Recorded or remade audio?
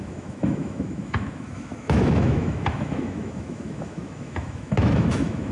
remade